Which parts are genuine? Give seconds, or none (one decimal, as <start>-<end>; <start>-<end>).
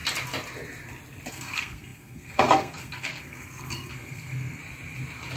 0.0-1.3; 4.6-5.4